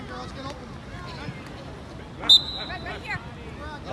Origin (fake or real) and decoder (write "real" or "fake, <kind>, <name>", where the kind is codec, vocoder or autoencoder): real